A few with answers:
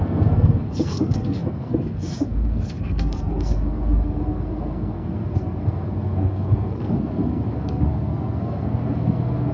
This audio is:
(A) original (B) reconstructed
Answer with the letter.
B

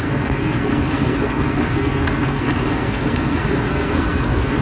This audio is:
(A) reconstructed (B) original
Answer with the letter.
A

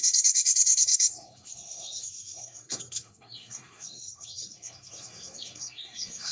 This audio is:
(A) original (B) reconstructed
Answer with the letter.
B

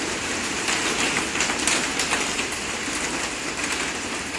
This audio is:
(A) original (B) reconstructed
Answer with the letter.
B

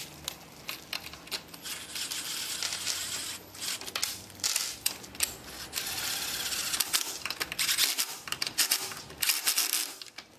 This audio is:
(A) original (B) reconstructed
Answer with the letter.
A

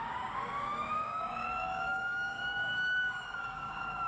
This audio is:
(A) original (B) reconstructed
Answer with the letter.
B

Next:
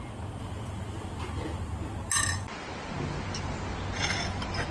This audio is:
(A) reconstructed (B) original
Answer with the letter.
B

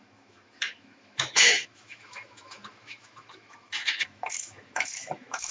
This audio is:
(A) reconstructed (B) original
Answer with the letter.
A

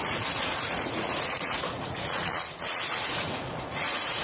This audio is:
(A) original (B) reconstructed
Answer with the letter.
B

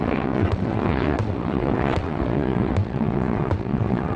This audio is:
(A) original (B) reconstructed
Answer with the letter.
B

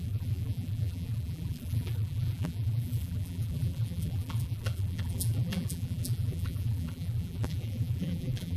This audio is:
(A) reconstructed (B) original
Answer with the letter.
A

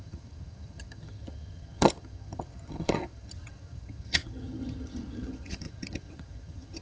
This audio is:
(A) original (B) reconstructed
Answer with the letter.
B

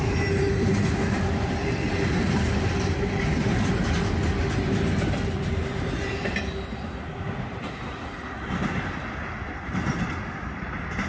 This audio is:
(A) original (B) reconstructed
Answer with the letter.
A